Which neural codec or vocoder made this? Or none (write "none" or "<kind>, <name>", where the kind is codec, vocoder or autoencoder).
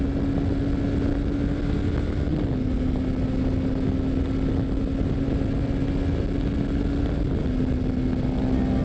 none